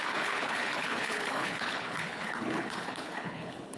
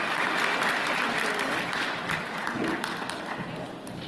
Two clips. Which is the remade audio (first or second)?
first